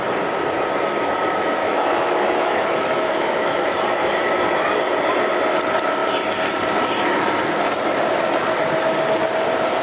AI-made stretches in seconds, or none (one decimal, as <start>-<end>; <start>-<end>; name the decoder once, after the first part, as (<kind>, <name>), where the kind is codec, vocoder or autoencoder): 1.6-4.4 (autoencoder, DAC-VAE)